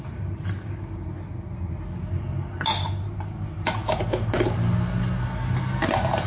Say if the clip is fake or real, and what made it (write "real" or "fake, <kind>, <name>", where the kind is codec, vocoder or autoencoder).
real